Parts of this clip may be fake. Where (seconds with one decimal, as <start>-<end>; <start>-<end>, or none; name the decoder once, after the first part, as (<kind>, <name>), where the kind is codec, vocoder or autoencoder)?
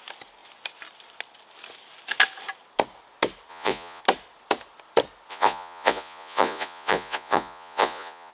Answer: 3.5-4.0 (vocoder, Vocos); 5.3-8.3